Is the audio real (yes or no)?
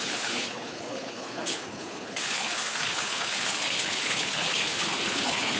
no